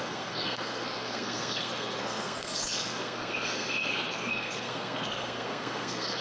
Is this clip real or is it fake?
fake